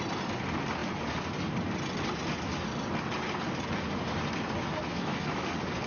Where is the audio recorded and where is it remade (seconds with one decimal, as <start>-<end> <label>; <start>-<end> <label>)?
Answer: 0.0-4.9 recorded; 4.9-5.5 remade; 5.5-5.9 recorded